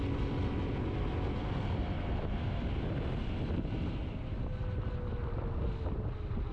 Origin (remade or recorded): recorded